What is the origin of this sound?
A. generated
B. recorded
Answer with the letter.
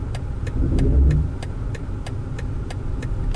B